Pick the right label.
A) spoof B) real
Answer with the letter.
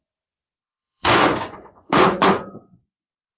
A